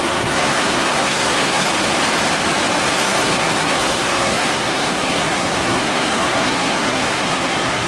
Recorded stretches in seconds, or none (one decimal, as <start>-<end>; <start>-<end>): 1.7-2.8